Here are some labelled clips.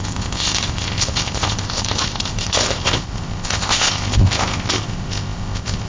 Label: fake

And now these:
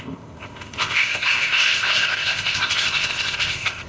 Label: fake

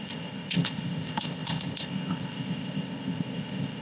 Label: fake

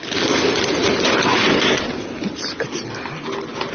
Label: real